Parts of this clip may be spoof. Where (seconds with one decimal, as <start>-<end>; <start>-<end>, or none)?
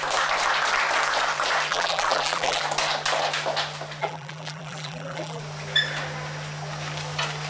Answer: 1.7-2.6; 4.0-5.4